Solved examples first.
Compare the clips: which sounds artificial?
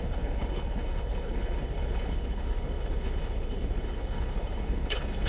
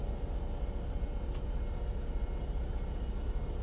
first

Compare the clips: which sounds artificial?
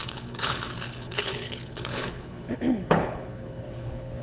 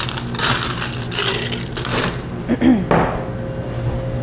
first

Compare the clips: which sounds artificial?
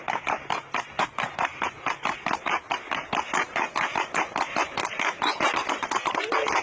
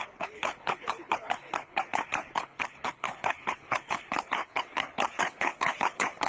second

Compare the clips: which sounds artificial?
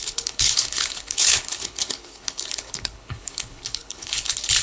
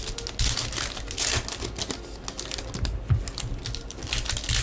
first